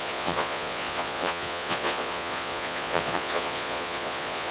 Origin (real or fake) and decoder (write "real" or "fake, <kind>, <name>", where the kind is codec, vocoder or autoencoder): fake, vocoder, Vocos